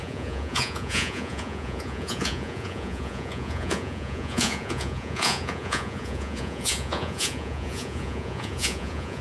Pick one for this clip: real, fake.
fake